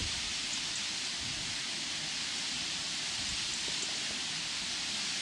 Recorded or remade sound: recorded